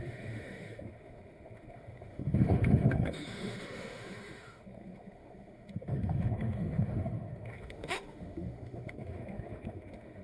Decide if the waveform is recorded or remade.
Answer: remade